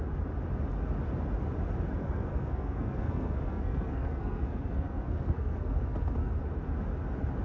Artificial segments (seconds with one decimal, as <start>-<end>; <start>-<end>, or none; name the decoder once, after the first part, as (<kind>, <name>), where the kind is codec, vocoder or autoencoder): 2.0-6.4 (codec, SNAC)